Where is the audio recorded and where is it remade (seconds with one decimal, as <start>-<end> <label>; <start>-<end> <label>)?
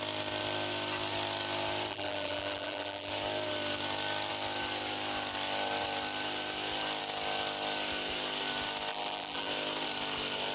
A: 0.0-1.9 recorded; 1.9-3.1 remade; 3.1-8.9 recorded; 8.9-9.5 remade; 9.5-10.5 recorded